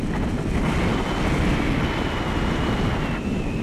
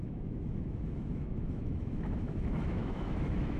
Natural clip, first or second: first